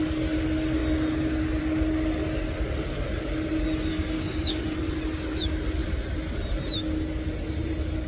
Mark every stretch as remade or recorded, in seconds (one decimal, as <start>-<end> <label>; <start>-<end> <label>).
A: 0.0-3.9 recorded; 3.9-4.6 remade; 4.6-8.1 recorded